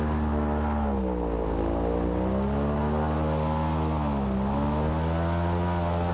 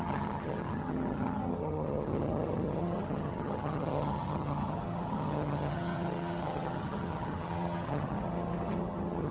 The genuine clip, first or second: first